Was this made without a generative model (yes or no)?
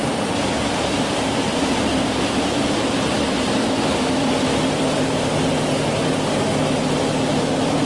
yes